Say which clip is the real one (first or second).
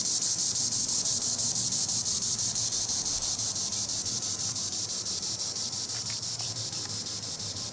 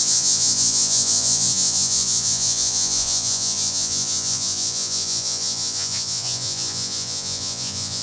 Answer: first